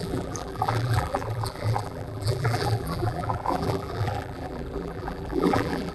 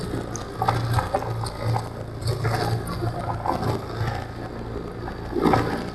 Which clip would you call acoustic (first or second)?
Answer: second